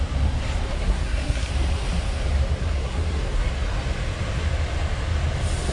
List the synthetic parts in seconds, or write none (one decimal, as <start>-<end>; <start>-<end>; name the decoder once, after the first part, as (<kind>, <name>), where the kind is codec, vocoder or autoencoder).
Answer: 0.7-1.5 (codec, SNAC); 2.6-3.5